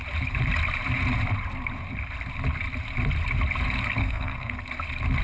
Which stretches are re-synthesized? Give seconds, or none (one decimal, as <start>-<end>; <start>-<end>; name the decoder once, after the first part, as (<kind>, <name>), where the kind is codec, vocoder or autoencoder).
4.0-4.5 (codec, SNAC)